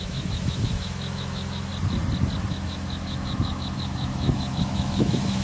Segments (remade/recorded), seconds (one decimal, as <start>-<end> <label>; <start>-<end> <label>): 0.0-1.7 remade; 1.7-2.5 recorded; 2.5-5.4 remade